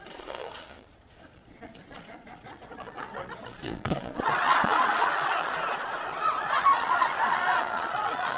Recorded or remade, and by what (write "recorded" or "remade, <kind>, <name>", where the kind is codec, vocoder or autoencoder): remade, vocoder, Vocos